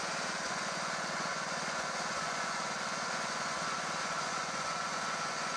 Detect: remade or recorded remade